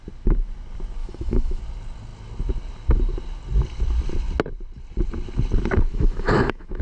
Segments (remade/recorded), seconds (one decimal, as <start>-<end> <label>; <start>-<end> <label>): 0.0-1.0 recorded; 1.0-1.6 remade; 1.6-5.9 recorded; 5.9-6.8 remade

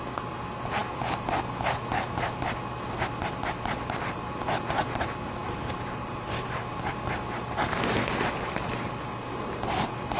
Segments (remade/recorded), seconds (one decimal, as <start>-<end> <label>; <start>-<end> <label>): 0.0-10.2 recorded